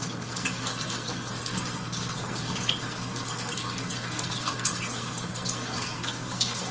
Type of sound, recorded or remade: remade